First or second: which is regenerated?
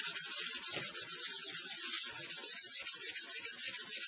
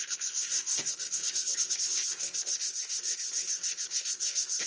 second